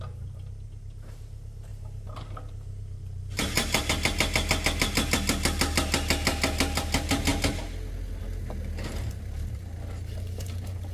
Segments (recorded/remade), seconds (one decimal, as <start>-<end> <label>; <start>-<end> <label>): 0.0-1.7 recorded; 1.7-3.9 remade; 3.9-10.9 recorded